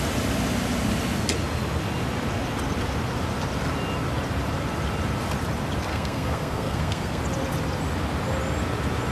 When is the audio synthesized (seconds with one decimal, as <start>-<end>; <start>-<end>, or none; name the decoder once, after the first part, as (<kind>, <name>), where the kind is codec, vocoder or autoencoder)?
5.9-7.2 (codec, SNAC)